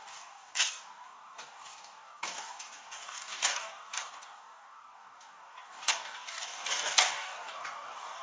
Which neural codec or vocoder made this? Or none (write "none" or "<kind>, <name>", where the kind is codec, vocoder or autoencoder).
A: codec, DAC